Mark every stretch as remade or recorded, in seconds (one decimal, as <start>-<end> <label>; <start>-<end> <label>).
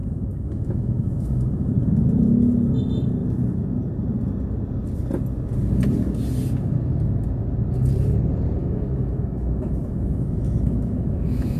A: 0.0-1.7 remade; 1.7-8.6 recorded; 8.6-11.6 remade